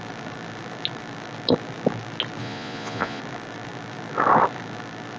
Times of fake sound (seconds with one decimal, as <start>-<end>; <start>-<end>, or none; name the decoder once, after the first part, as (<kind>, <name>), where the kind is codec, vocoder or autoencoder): 2.4-3.2 (vocoder, Vocos)